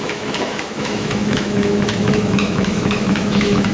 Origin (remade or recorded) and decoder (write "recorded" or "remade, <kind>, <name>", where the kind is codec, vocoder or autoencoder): remade, autoencoder, DAC-VAE